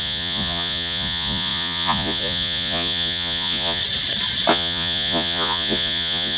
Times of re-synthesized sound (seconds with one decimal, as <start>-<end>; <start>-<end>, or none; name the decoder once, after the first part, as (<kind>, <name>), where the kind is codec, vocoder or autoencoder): 0.0-3.8 (vocoder, Vocos); 4.5-6.4